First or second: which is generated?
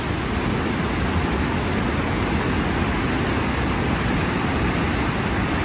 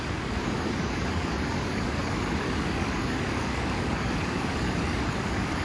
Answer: second